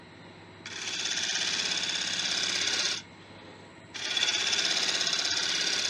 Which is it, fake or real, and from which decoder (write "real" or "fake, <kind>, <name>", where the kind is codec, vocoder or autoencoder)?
real